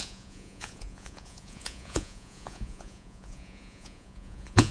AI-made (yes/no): yes